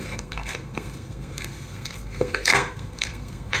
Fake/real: fake